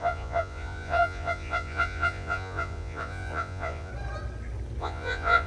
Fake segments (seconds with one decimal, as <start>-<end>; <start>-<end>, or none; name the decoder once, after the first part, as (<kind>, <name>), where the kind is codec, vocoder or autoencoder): 0.0-3.9 (vocoder, Vocos); 4.8-5.5